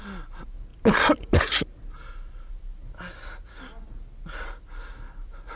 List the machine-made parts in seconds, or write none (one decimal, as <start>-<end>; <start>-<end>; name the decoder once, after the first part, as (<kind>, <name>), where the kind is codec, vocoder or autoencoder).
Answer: none